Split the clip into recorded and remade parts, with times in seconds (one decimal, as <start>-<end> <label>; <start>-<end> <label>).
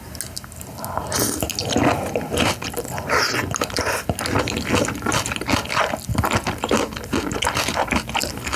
0.0-8.6 recorded